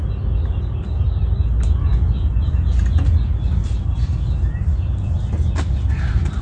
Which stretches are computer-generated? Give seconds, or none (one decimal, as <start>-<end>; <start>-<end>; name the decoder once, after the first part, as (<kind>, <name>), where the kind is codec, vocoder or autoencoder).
none